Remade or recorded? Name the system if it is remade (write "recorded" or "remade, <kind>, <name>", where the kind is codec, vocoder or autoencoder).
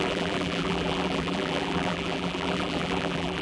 remade, vocoder, BigVGAN v2